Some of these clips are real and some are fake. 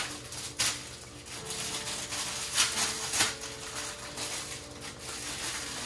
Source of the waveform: real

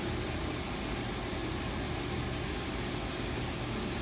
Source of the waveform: real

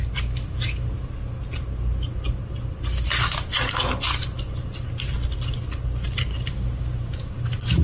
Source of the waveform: real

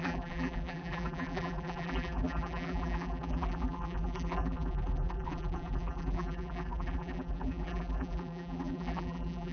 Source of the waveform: fake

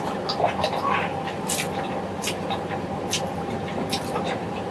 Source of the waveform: real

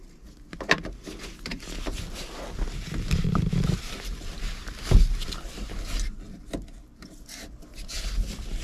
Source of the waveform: real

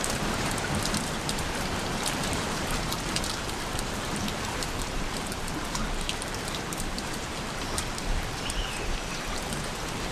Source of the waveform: fake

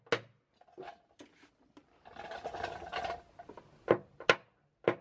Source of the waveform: real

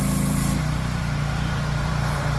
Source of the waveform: fake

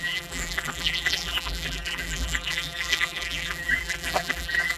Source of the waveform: fake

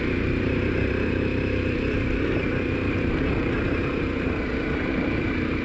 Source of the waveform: fake